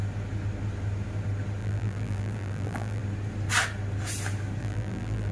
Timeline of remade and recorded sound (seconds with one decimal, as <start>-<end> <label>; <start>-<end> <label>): 0.0-1.6 recorded; 1.6-3.0 remade; 3.0-4.6 recorded; 4.6-5.3 remade